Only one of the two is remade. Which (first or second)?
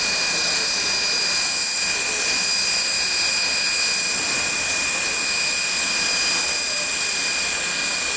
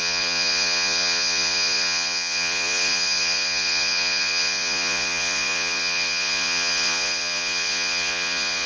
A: second